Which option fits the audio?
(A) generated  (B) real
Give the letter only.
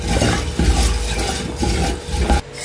B